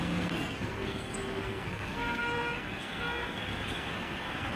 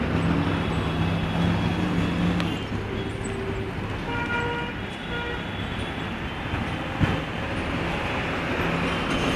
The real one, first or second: second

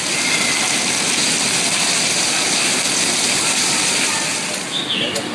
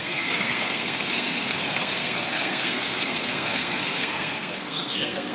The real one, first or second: first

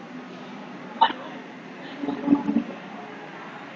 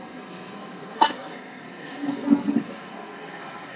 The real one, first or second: first